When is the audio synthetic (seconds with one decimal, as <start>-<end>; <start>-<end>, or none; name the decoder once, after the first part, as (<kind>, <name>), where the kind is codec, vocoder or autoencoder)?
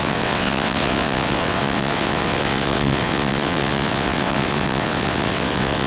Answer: 0.0-5.9 (vocoder, WaveNeXt)